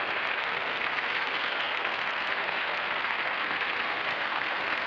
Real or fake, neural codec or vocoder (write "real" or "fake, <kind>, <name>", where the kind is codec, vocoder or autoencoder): fake, codec, SNAC